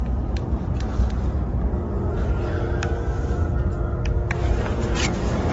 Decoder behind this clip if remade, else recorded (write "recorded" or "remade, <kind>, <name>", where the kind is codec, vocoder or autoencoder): recorded